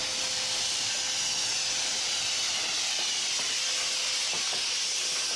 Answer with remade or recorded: recorded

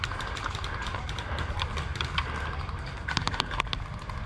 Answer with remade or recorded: recorded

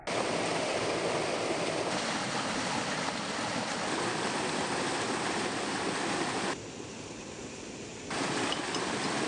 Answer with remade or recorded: recorded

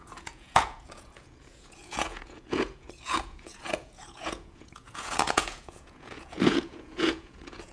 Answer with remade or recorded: remade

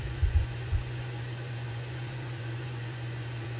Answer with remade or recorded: remade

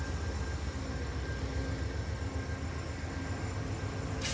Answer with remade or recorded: recorded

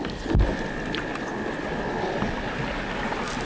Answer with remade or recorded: recorded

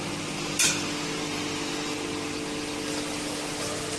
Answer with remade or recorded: recorded